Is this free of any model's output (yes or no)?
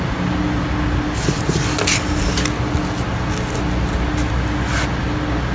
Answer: yes